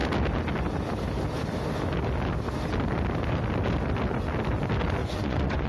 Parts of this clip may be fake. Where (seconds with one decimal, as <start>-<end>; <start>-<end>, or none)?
5.0-5.7